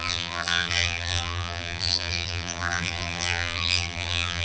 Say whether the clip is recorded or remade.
remade